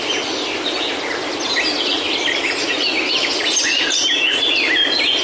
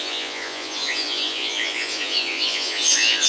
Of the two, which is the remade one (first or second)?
second